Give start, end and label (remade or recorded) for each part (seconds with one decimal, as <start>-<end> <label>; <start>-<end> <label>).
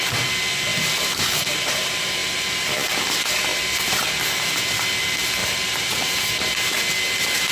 0.0-3.5 recorded; 3.5-5.0 remade; 5.0-5.4 recorded; 5.4-6.2 remade; 6.2-7.5 recorded